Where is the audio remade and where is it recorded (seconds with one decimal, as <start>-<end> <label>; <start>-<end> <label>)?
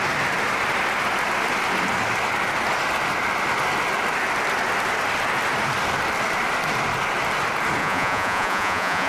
0.0-7.8 recorded; 7.8-9.1 remade